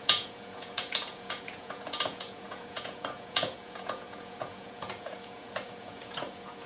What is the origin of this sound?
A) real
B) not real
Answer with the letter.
B